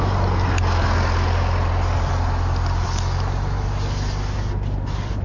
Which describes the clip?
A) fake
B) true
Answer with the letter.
B